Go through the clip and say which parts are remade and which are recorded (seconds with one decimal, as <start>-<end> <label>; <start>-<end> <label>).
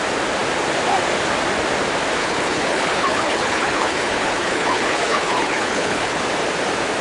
0.0-2.2 recorded; 2.2-6.2 remade; 6.2-7.0 recorded